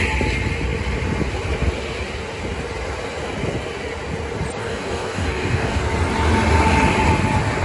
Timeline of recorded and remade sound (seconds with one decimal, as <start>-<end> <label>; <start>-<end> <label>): 0.0-4.6 recorded; 4.6-5.8 remade; 5.8-7.6 recorded